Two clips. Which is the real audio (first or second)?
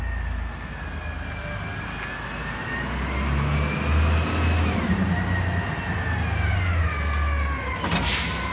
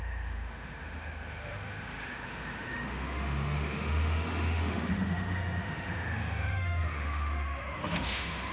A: first